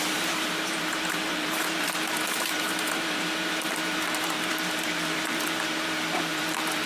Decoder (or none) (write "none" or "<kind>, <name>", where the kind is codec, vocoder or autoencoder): vocoder, BigVGAN v2